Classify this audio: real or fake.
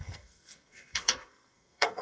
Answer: fake